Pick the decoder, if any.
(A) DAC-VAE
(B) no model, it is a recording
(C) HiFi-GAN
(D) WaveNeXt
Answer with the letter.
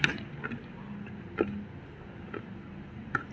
B